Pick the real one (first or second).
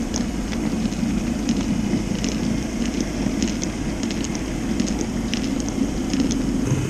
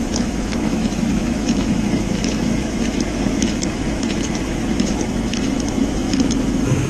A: first